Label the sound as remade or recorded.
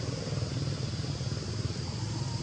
recorded